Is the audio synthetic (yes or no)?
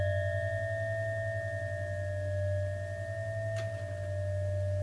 no